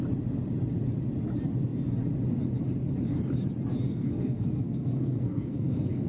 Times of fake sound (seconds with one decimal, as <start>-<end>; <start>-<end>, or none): 3.9-6.1